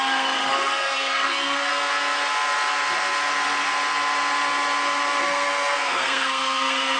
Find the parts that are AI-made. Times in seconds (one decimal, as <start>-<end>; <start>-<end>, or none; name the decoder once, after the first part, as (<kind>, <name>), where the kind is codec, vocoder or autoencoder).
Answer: 0.0-1.7 (codec, SNAC); 5.2-7.0